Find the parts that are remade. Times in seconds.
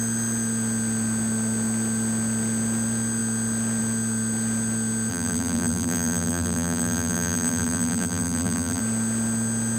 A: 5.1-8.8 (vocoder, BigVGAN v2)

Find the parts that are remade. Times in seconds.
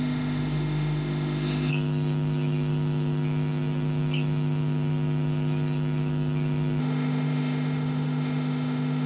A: 0.0-1.7 (autoencoder, DAC-VAE); 6.8-9.1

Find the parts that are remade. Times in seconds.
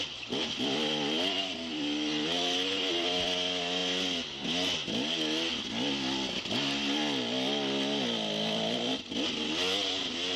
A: none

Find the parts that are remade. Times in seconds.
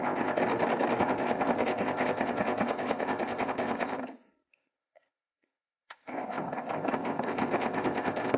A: 0.0-0.4 (codec, ZipCodec); 1.0-4.0; 4.5-8.4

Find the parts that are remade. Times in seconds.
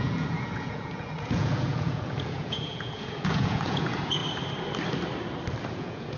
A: 0.0-4.2 (vocoder, Vocos); 5.7-6.2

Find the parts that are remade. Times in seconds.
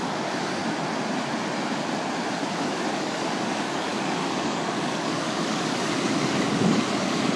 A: 0.0-0.6 (codec, DAC); 2.9-7.4